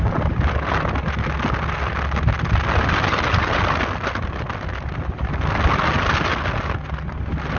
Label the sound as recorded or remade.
recorded